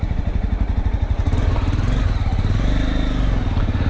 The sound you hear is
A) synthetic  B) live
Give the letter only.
B